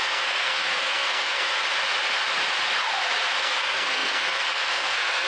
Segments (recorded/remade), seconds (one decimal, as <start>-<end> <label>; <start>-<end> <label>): 0.0-1.6 remade; 1.6-3.4 recorded; 3.4-5.3 remade